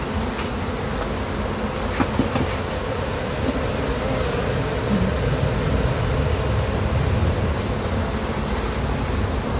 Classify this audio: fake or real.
real